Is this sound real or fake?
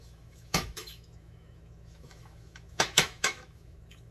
fake